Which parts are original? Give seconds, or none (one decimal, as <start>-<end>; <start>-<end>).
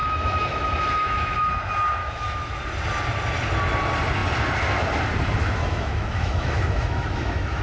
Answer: 1.5-2.0; 2.5-5.6